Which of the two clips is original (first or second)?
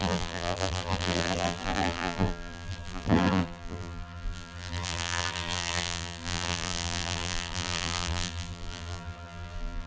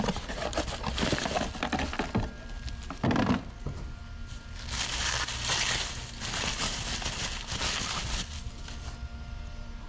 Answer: second